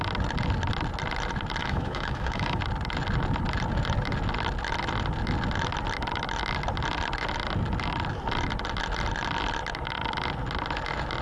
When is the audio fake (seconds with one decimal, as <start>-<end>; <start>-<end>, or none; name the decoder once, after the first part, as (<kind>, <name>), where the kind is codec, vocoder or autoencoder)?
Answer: 1.6-2.6 (autoencoder, DAC-VAE)